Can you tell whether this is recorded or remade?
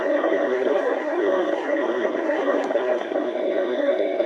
remade